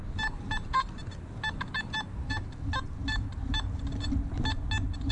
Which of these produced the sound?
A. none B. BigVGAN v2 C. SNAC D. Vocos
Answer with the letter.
A